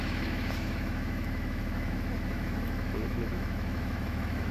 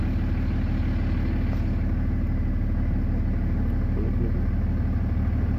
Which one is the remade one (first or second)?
first